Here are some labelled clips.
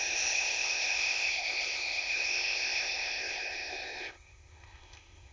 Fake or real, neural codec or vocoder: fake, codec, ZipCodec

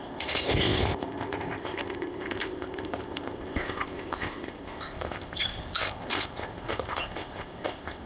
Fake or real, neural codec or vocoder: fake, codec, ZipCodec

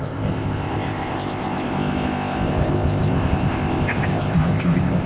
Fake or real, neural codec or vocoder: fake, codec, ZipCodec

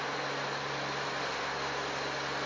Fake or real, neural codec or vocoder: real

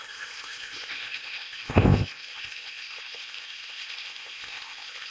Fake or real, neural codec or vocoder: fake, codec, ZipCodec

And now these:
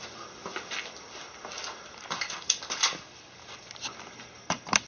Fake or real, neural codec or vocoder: real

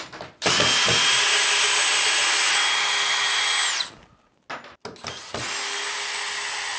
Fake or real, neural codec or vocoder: real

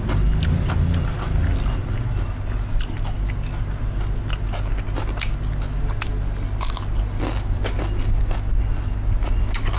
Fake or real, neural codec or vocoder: real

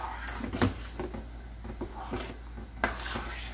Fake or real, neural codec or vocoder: real